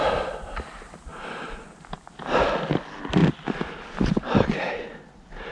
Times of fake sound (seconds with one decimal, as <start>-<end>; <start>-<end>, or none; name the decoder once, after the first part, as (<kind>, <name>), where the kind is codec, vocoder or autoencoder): none